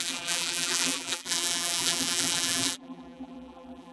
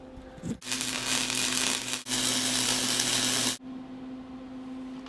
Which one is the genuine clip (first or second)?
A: second